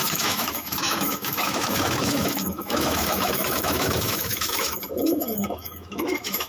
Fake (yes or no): yes